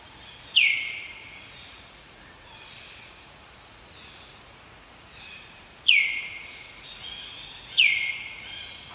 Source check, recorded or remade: remade